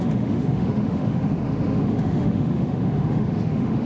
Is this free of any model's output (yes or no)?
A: no